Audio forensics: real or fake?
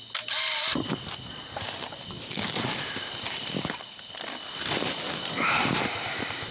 real